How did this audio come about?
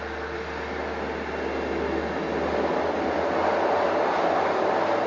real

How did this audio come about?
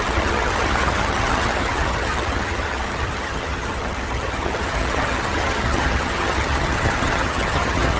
fake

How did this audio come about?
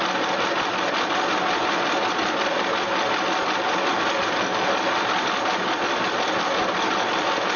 real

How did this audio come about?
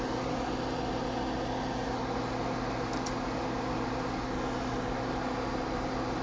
real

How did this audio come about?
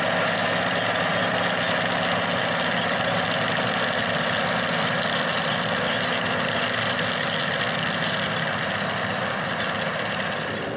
real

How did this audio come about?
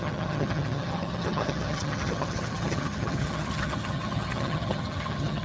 fake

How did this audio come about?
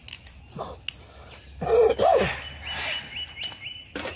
real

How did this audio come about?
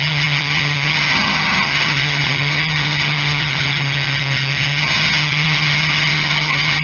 fake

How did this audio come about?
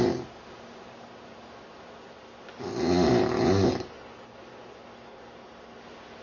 real